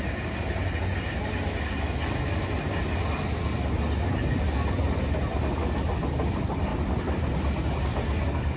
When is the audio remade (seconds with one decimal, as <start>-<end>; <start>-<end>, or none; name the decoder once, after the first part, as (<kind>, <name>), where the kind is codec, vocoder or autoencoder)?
none